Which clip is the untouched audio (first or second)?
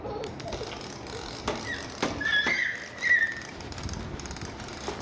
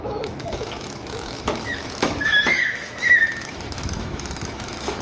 first